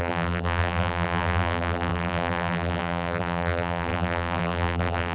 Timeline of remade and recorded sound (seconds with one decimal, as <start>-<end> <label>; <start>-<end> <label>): 0.0-5.1 remade